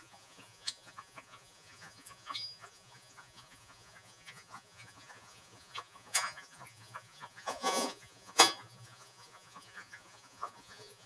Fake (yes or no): yes